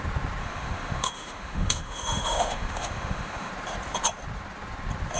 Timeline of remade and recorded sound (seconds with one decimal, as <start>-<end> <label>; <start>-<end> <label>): 0.0-0.4 recorded; 0.4-3.5 remade; 3.5-5.2 recorded

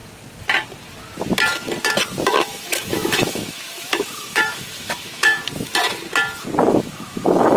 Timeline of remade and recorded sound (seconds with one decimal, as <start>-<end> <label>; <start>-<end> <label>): 0.0-2.2 recorded; 2.2-5.4 remade; 5.4-6.7 recorded; 6.7-7.6 remade

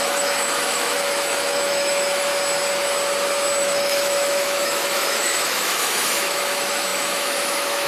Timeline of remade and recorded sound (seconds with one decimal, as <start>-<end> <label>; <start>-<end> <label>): 0.0-2.3 remade; 2.3-3.6 recorded; 3.6-7.9 remade

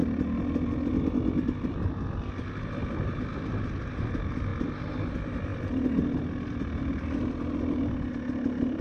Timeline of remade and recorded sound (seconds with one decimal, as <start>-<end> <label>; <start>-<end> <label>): 0.0-8.8 recorded

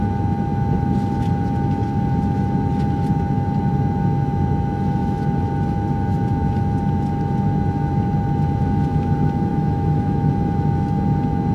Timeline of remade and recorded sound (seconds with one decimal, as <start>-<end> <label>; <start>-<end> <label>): 0.0-9.5 recorded; 9.5-10.3 remade; 10.3-11.5 recorded

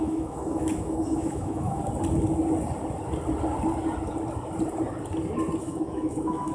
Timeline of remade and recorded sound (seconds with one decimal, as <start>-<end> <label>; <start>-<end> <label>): 0.0-1.8 remade; 1.8-5.6 recorded; 5.6-6.5 remade

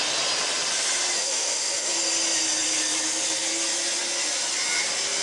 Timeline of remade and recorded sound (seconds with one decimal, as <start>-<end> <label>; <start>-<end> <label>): 0.0-1.2 recorded; 1.2-1.9 remade; 1.9-5.2 recorded

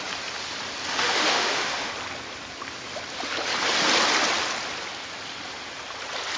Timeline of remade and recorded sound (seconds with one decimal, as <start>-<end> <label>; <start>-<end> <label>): 0.0-0.9 recorded; 0.9-1.9 remade; 1.9-6.4 recorded